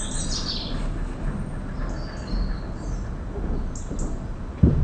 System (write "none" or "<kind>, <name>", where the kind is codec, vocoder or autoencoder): none